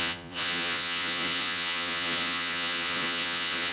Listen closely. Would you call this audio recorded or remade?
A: remade